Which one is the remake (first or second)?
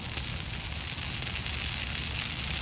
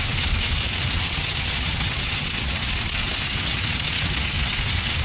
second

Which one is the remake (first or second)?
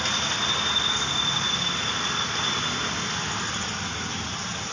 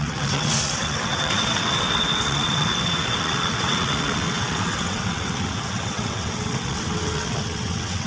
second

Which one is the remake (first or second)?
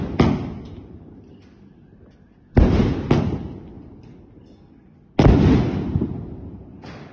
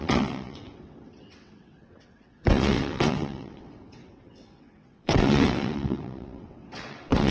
second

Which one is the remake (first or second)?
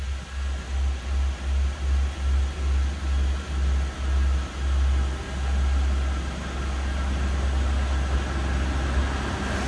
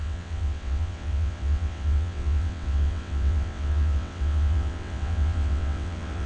second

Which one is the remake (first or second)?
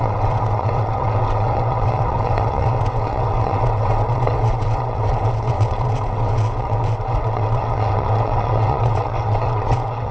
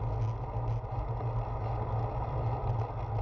first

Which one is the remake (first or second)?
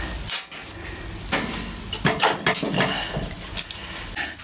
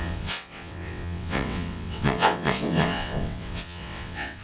second